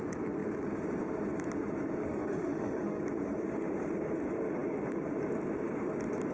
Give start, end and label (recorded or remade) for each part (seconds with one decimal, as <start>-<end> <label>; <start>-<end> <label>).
0.0-2.0 recorded; 2.0-3.0 remade; 3.0-6.3 recorded